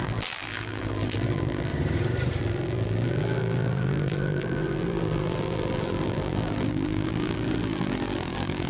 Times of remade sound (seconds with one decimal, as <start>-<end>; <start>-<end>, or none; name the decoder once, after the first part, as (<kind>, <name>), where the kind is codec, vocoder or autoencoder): 0.0-1.7 (vocoder, BigVGAN v2); 2.4-8.7